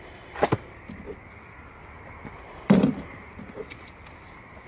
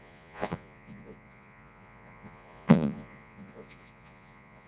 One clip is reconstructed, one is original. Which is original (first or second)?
first